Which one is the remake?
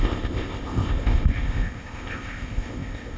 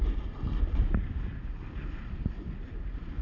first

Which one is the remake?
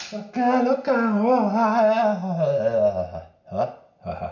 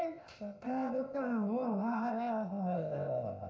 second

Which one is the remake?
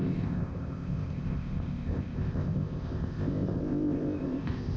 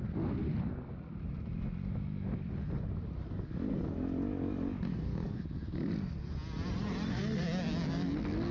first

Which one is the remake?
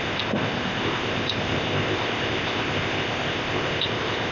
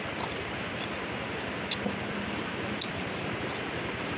first